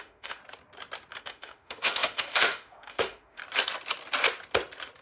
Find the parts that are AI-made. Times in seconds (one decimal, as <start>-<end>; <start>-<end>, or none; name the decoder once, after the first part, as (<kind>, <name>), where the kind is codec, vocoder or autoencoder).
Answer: 0.0-0.4 (autoencoder, DAC-VAE); 1.2-3.4

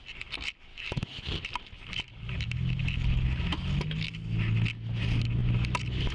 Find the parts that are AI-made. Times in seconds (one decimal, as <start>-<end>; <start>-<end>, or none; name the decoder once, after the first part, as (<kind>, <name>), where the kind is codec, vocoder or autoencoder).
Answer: 0.7-1.3 (autoencoder, DAC-VAE)